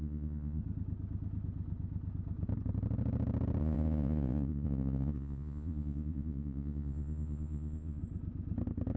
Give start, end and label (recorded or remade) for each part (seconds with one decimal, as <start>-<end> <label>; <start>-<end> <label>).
0.0-0.6 remade; 0.6-3.6 recorded; 3.6-8.0 remade; 8.0-9.0 recorded